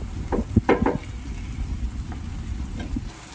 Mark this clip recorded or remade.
recorded